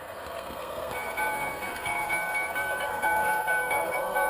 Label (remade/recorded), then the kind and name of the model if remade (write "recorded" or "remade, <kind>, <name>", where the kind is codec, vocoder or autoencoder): remade, codec, SNAC